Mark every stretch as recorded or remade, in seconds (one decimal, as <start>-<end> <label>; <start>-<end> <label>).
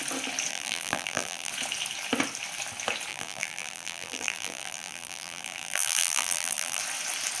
0.0-0.5 recorded; 0.5-1.5 remade; 1.5-3.1 recorded; 3.1-6.8 remade; 6.8-7.4 recorded